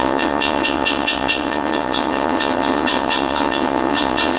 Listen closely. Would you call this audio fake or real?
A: fake